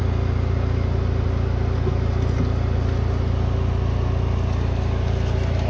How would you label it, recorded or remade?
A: recorded